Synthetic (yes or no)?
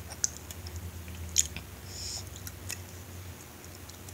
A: no